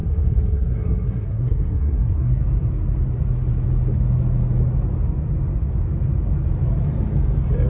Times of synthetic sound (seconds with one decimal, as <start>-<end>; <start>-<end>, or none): 0.0-2.4